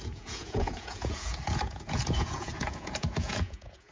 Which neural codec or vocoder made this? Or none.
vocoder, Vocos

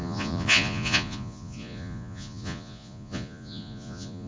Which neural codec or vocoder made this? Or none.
vocoder, Vocos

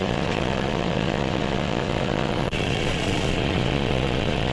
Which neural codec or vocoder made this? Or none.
vocoder, Vocos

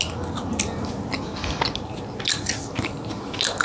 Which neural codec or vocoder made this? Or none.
none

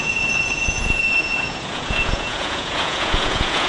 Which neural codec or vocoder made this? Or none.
vocoder, Vocos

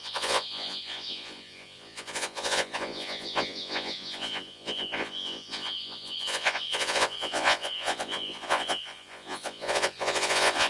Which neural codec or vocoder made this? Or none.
vocoder, Vocos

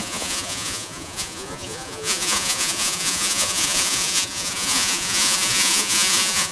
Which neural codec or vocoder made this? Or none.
vocoder, Vocos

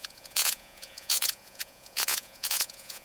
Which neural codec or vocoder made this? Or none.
vocoder, Vocos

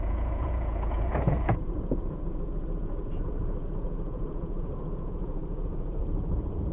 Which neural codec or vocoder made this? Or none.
vocoder, Vocos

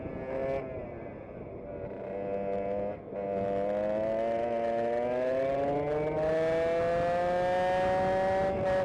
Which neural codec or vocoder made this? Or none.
none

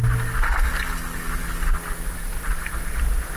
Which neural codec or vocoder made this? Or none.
none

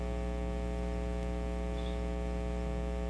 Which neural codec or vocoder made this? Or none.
none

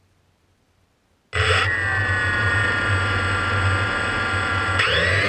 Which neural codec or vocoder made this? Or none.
none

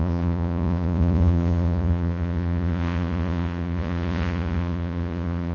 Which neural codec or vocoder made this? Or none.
vocoder, Vocos